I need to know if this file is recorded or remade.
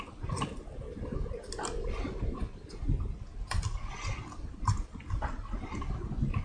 recorded